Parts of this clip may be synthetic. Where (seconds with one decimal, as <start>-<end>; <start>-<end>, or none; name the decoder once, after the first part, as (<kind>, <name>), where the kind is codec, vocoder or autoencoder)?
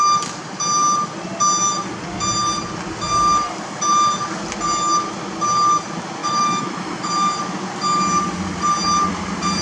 6.2-7.1 (autoencoder, DAC-VAE)